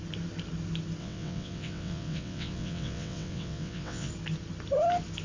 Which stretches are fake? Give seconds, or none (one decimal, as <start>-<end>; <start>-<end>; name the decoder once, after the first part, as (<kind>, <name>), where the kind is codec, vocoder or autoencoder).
1.0-4.1 (vocoder, WaveNeXt)